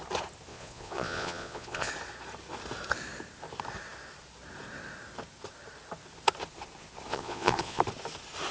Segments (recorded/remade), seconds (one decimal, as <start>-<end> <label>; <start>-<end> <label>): 0.0-0.5 recorded; 0.5-1.9 remade; 1.9-7.1 recorded; 7.1-7.8 remade; 7.8-8.5 recorded

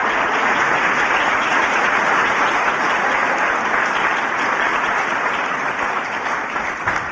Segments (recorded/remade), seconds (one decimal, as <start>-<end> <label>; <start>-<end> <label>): 0.0-3.3 remade; 3.3-4.7 recorded; 4.7-5.3 remade; 5.3-7.1 recorded